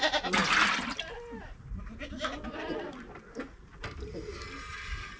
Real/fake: real